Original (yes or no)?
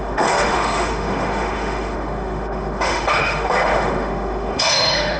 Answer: no